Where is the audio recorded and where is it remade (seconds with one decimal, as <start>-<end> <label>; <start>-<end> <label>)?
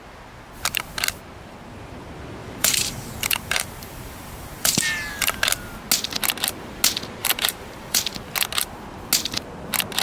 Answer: 0.0-2.4 recorded; 2.4-5.4 remade; 5.4-7.2 recorded; 7.2-8.0 remade; 8.0-10.0 recorded